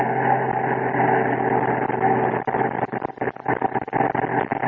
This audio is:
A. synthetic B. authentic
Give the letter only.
B